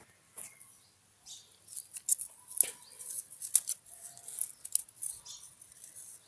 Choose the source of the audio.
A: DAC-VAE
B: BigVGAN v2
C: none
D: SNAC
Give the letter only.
C